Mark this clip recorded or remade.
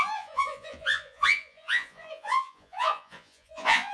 remade